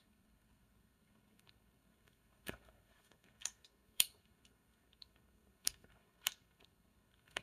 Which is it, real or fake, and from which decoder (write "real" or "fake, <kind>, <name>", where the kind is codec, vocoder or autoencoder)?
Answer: fake, codec, SNAC